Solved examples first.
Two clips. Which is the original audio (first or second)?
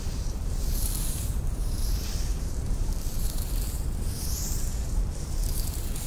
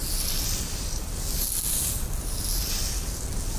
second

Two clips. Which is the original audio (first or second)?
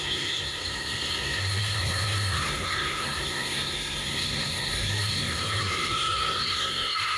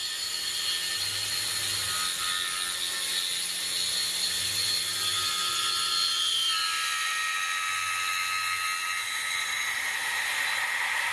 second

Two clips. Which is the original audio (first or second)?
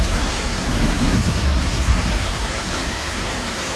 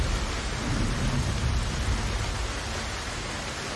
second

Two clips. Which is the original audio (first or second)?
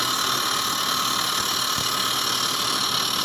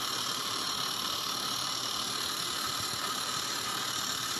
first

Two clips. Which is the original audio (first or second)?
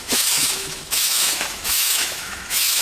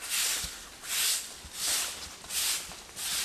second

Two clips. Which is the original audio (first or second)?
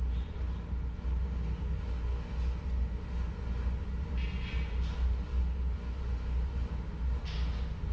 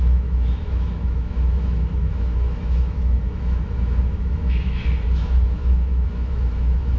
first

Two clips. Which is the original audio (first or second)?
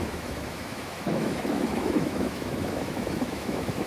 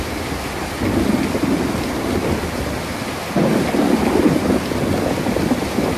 second